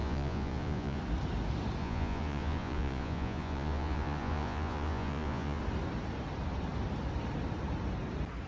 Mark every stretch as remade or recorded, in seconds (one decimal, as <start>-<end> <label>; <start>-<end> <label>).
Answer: 0.0-1.0 remade; 1.0-1.8 recorded; 1.8-5.6 remade; 5.6-8.5 recorded